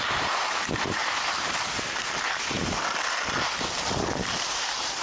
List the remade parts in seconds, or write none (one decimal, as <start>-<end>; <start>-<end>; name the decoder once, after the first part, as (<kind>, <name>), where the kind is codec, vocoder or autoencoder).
0.0-2.6 (vocoder, BigVGAN v2); 4.5-5.0